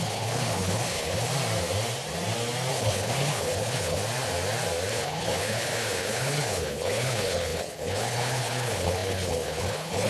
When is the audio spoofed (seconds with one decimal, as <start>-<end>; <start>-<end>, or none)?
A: 0.0-1.3; 2.7-4.0; 4.9-10.1